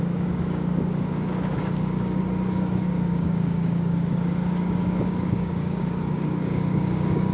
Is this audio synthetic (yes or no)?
yes